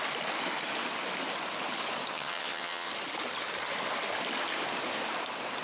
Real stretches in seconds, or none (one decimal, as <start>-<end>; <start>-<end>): 0.0-2.1; 2.9-5.6